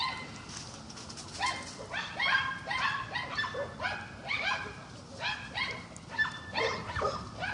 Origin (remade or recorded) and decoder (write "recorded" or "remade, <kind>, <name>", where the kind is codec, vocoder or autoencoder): recorded